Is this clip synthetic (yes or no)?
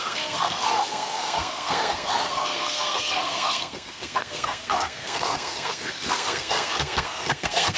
yes